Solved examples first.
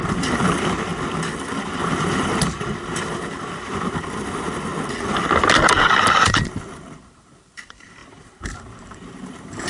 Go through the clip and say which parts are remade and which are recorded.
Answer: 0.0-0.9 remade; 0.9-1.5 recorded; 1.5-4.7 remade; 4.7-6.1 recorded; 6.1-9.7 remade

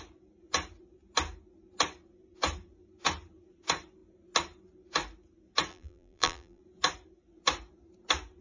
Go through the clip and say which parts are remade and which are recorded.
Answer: 0.0-5.7 recorded; 5.7-6.6 remade; 6.6-8.4 recorded